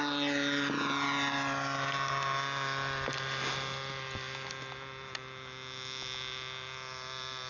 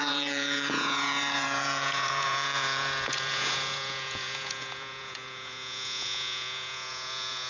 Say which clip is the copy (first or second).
second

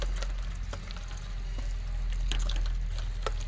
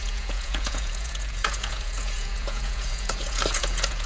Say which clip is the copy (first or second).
second